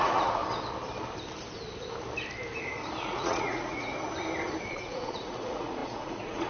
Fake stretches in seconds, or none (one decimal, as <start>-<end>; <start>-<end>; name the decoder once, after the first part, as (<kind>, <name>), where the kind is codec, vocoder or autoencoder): 0.0-0.4 (vocoder, Vocos); 3.0-3.9; 4.7-6.5